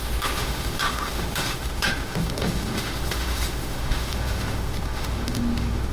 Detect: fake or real fake